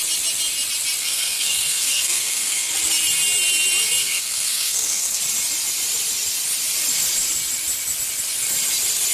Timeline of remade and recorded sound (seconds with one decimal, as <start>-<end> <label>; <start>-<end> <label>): 0.0-1.0 recorded; 1.0-2.7 remade; 2.7-4.0 recorded; 4.0-5.2 remade; 5.2-9.1 recorded